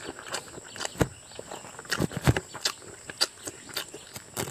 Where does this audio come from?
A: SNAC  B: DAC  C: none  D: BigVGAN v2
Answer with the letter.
C